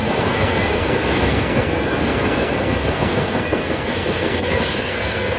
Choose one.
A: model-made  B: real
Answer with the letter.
A